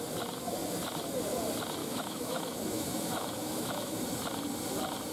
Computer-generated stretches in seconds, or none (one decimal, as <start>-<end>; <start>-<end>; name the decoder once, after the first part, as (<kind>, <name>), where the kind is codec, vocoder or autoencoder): 1.8-4.0 (autoencoder, DAC-VAE)